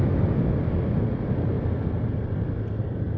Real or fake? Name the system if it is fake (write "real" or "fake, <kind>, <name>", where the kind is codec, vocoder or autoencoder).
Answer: real